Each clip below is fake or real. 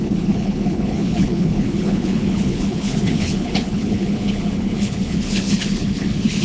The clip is fake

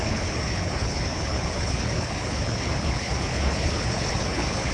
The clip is fake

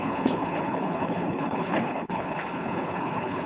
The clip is fake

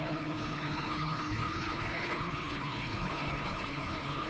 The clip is fake